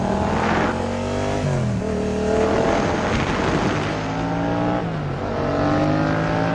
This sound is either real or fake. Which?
real